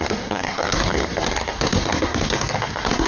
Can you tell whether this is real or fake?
fake